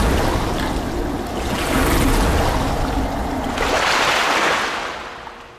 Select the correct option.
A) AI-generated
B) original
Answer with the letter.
B